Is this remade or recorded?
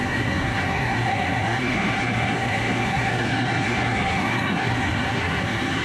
remade